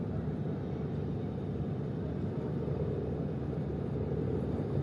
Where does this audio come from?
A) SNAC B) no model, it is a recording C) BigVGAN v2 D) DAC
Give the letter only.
B